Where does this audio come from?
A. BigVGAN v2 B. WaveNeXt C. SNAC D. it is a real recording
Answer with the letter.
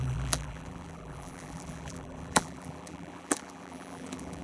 A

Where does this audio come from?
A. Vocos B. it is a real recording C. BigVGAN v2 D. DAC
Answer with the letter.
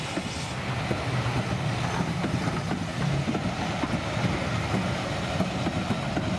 B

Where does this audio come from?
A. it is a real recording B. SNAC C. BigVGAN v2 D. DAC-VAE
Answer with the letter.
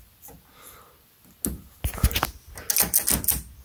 A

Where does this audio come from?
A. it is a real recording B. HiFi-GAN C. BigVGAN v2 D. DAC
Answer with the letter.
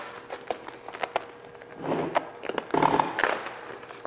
A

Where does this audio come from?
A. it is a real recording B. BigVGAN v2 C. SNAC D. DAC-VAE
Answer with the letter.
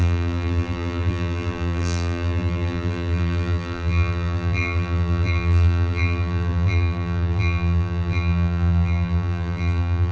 B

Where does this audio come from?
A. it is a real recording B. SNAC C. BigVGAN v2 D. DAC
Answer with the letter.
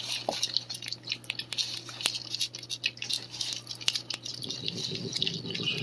A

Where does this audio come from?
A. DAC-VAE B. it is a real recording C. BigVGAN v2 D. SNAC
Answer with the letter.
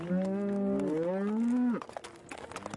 B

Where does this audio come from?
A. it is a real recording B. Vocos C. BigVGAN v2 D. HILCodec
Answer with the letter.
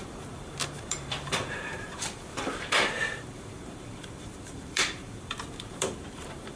C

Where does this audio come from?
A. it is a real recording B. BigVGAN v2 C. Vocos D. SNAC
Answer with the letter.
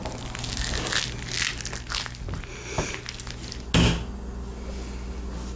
A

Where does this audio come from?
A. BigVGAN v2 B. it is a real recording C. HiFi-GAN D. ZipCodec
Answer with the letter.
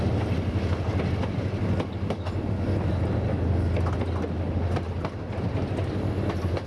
B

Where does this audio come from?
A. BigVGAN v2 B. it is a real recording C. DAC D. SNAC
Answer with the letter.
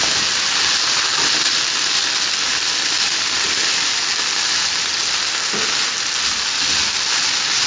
B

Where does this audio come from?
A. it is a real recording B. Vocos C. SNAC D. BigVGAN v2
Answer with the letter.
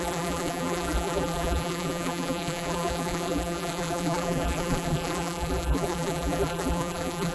D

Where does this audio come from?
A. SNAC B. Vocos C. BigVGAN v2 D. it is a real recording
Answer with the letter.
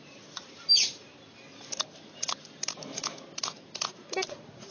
C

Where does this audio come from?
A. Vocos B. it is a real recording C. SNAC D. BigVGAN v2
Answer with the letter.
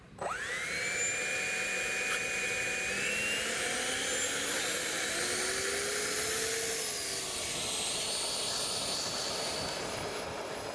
B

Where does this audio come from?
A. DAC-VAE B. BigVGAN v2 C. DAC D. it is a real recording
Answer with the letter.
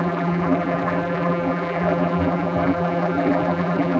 B